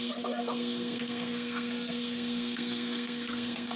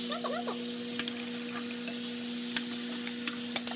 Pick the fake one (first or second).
first